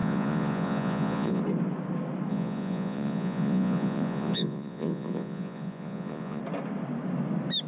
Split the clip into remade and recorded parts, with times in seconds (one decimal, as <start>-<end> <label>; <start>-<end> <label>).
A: 0.0-1.4 remade; 1.4-2.3 recorded; 2.3-6.4 remade; 6.4-7.7 recorded